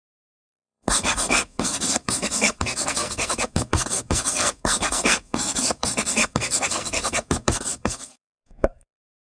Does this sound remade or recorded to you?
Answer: remade